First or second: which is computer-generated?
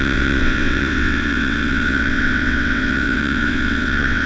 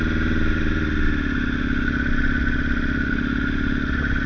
first